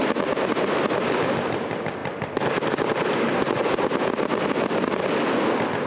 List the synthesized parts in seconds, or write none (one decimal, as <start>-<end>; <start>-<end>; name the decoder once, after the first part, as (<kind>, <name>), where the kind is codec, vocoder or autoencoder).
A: none